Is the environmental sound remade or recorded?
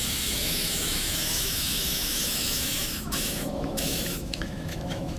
remade